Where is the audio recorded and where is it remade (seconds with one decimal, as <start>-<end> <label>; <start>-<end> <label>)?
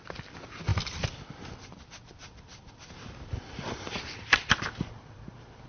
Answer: 0.0-2.2 recorded; 2.2-5.3 remade; 5.3-5.7 recorded